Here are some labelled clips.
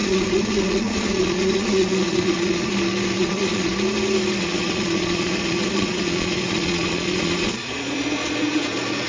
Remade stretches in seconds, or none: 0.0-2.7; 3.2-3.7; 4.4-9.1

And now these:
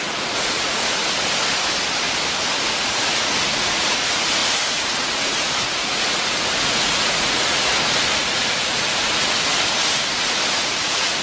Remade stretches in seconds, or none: 0.0-1.0; 2.6-7.7; 8.2-9.5; 10.2-11.2

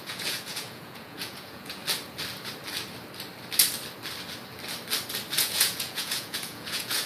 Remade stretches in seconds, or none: 0.0-1.8; 5.4-7.1

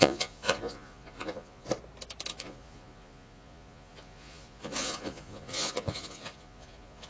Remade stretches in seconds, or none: 0.0-1.7; 2.3-7.1

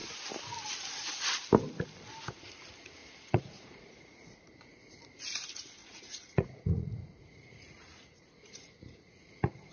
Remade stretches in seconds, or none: 3.0-4.9; 5.8-9.7

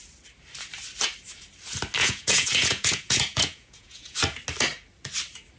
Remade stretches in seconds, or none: 2.0-4.2